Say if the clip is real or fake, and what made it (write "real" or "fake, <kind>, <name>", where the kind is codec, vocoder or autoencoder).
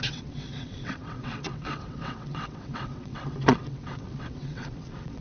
fake, vocoder, WaveNeXt